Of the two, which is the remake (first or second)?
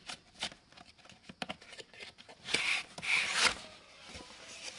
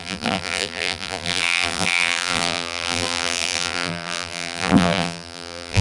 second